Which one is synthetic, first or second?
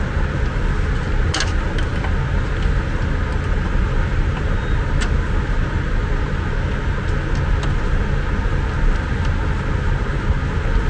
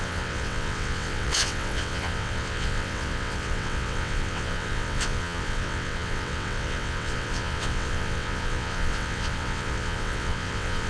second